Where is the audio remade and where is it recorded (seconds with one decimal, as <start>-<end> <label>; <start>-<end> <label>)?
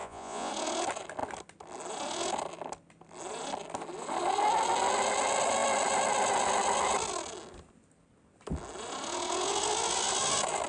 0.0-0.5 remade; 0.5-10.7 recorded